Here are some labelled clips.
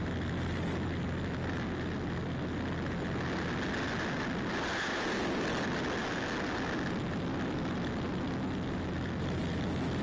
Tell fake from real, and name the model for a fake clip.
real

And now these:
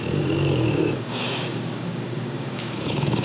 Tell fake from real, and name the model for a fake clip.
fake, codec, DAC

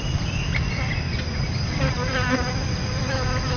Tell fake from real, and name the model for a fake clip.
real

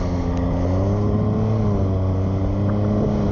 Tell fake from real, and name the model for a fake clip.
real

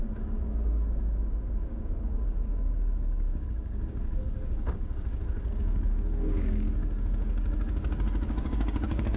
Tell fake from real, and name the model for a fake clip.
fake, codec, DAC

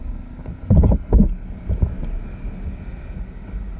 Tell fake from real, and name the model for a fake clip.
real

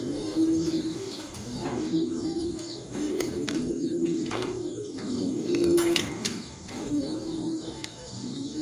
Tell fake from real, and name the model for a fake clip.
fake, codec, DAC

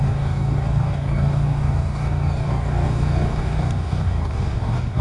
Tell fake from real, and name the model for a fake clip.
fake, codec, DAC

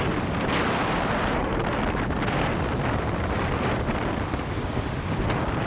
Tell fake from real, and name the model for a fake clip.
real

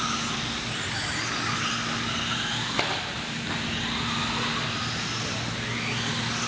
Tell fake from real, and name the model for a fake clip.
real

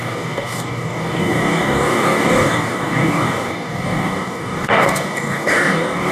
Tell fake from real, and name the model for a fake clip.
fake, codec, DAC